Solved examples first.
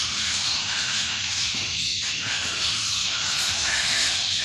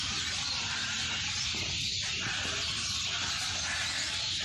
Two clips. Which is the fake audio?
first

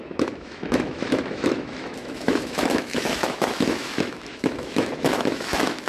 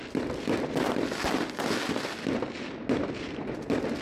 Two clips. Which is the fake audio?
first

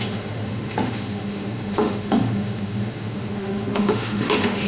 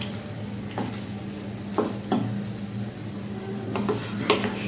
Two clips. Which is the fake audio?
first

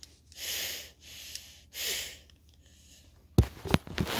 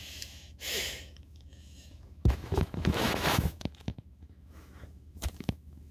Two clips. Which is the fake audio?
second